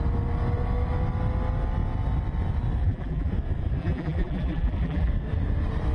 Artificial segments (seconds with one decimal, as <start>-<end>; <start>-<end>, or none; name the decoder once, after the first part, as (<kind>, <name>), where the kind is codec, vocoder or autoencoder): 2.8-3.3 (vocoder, BigVGAN v2); 3.8-5.1